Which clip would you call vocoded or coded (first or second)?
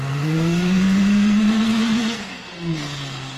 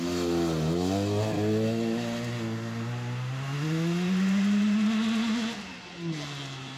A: first